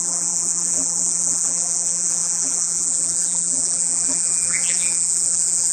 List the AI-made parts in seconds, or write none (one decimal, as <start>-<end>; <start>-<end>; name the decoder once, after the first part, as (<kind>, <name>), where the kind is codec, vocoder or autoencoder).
0.0-5.7 (vocoder, BigVGAN v2)